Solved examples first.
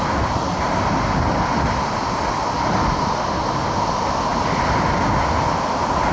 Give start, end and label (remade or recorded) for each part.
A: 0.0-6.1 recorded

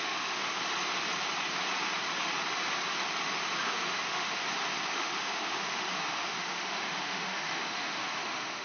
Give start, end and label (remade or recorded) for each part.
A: 0.0-0.4 remade; 0.4-3.6 recorded; 3.6-4.4 remade; 4.4-4.9 recorded; 4.9-8.6 remade

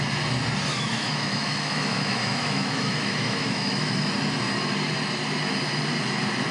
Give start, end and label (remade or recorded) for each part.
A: 0.0-0.7 recorded; 0.7-4.1 remade; 4.1-6.5 recorded